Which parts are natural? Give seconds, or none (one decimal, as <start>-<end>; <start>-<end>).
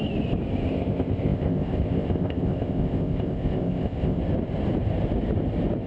0.0-0.7; 4.2-5.9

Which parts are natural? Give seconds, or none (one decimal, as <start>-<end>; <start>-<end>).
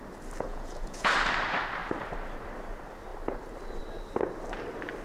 0.0-0.5; 1.1-5.0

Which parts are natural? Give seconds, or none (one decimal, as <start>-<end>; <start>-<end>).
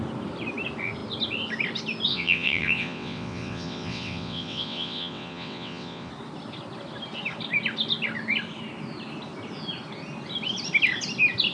0.0-2.1; 6.1-11.5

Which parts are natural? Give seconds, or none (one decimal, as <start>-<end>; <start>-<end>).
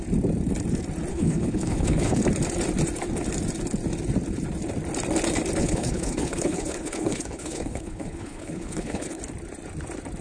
0.0-1.1; 2.2-5.6; 9.2-10.2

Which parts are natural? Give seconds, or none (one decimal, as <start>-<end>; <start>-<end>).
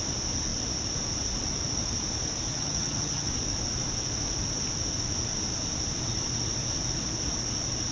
0.0-2.5; 3.3-7.9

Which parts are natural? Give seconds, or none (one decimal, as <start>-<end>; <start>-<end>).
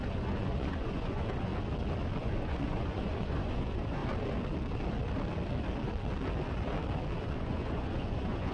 1.5-2.2; 4.0-7.2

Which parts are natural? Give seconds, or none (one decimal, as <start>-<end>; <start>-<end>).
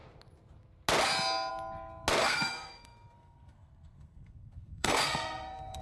0.0-2.2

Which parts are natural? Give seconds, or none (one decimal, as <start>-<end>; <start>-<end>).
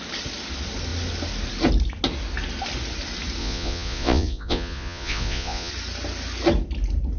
0.0-3.4; 5.7-7.2